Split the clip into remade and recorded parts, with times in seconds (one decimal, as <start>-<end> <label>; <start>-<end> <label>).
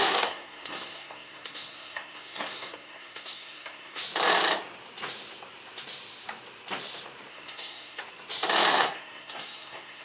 0.0-4.0 remade; 4.0-7.3 recorded; 7.3-8.0 remade; 8.0-8.7 recorded; 8.7-10.0 remade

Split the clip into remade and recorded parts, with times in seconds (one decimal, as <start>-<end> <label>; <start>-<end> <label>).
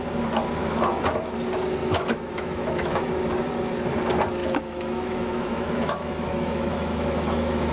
0.0-1.8 recorded; 1.8-3.0 remade; 3.0-4.4 recorded; 4.4-7.7 remade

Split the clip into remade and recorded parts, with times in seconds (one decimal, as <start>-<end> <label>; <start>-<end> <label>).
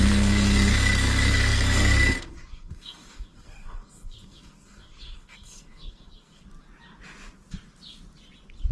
0.0-6.4 remade; 6.4-8.7 recorded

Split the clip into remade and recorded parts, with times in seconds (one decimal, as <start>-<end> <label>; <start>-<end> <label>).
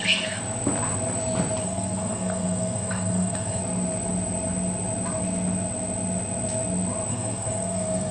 0.0-0.4 remade; 0.4-1.6 recorded; 1.6-3.6 remade; 3.6-7.1 recorded; 7.1-8.1 remade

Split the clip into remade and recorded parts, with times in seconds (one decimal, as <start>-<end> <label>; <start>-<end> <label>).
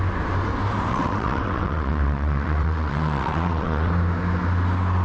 0.0-0.9 recorded; 0.9-3.9 remade; 3.9-5.0 recorded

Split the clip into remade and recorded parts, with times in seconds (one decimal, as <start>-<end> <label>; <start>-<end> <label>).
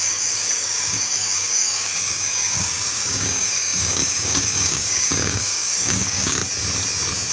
0.0-6.4 remade; 6.4-7.3 recorded